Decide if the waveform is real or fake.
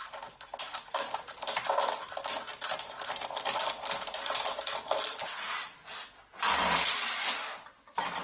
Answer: real